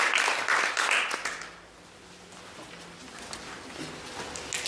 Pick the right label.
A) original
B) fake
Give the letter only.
A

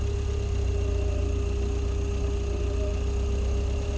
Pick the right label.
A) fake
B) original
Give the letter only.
B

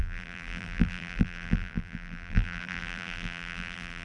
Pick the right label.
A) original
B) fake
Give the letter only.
B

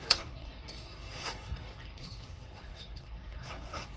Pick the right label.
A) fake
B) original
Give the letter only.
A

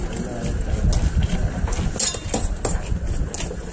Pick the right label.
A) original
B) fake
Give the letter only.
A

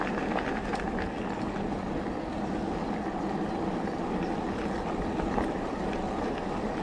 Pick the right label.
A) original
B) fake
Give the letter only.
A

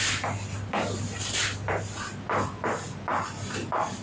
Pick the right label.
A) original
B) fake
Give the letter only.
A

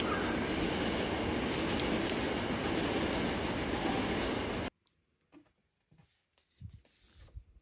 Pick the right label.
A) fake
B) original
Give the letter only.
B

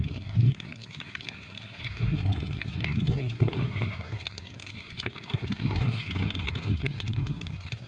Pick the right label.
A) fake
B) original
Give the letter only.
A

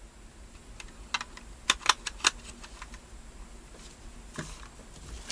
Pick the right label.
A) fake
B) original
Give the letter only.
B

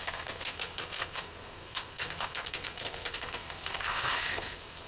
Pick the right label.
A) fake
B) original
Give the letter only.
A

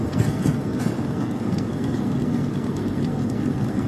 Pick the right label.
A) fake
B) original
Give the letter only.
A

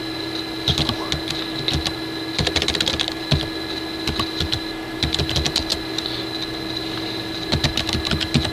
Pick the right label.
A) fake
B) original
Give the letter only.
B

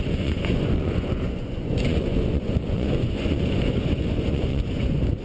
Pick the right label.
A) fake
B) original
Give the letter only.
A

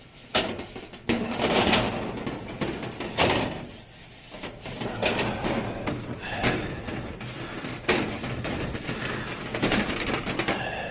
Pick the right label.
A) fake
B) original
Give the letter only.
B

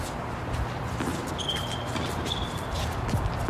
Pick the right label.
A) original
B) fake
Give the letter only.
A